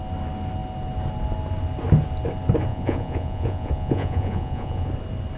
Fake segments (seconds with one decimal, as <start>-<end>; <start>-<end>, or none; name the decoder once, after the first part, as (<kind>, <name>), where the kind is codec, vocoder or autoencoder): 2.7-4.9 (vocoder, Vocos)